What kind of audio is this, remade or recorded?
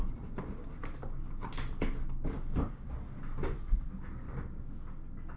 recorded